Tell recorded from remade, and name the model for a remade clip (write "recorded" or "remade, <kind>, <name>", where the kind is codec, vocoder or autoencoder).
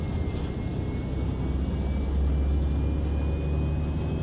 recorded